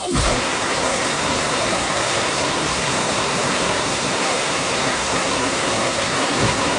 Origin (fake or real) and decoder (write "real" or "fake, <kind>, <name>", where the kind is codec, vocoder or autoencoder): fake, codec, SNAC